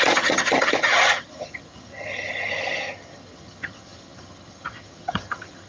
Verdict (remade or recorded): remade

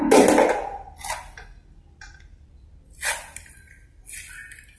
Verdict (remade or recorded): recorded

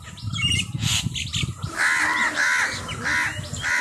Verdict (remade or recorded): recorded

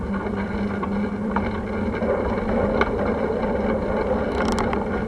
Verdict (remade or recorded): recorded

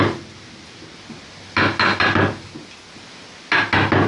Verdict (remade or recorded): recorded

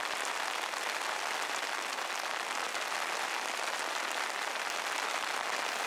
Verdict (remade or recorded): recorded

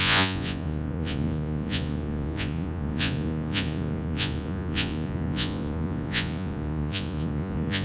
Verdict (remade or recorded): remade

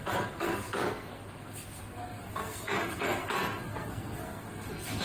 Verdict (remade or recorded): remade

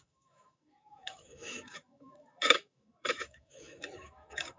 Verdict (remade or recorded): remade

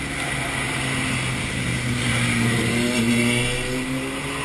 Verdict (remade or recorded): recorded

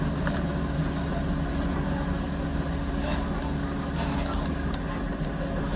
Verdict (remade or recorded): recorded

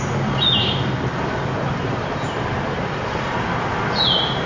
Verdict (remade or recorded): recorded